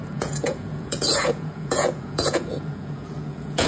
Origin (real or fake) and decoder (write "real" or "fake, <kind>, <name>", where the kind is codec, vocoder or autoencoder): fake, vocoder, Vocos